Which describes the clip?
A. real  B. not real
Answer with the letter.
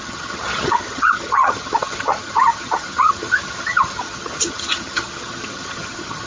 B